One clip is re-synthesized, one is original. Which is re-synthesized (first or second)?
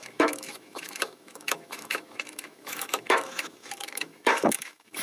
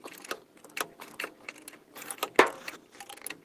first